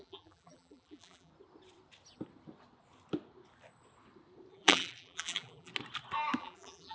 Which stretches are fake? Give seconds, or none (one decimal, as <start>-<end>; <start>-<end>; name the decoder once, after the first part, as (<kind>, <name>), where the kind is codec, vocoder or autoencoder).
0.0-1.3 (vocoder, BigVGAN v2); 4.5-5.7; 6.4-6.9